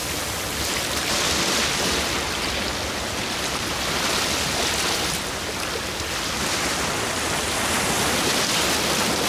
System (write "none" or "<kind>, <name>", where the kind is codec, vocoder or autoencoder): none